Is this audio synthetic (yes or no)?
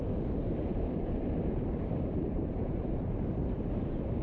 yes